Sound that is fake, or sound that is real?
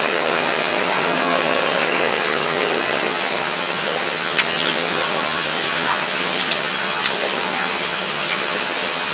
fake